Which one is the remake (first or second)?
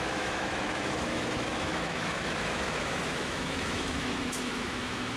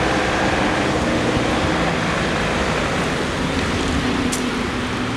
first